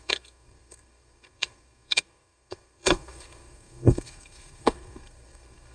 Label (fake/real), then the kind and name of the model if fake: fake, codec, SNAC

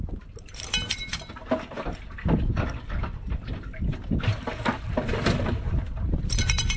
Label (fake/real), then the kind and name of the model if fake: real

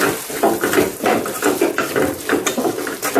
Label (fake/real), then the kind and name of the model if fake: real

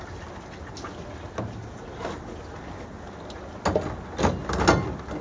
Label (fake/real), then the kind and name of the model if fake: real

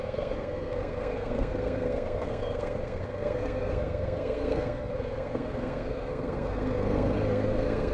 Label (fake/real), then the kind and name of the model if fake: fake, codec, SNAC